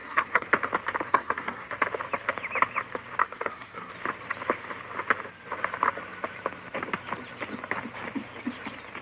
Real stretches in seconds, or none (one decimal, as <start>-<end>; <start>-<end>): 0.5-1.1; 1.7-3.2; 3.9-9.0